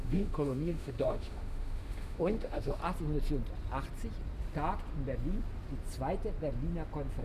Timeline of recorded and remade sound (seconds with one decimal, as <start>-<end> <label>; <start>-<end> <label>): 0.0-2.8 remade; 2.8-7.2 recorded